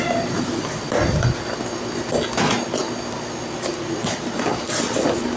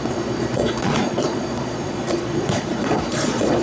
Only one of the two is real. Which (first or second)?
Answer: first